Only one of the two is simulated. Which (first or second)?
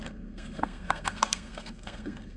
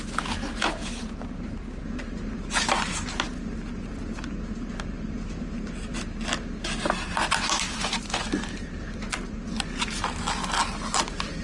first